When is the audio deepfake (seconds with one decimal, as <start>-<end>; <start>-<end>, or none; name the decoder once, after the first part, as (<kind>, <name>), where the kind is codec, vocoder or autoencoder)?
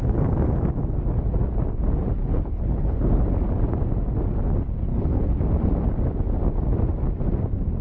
2.2-3.2 (codec, HILCodec); 4.9-5.4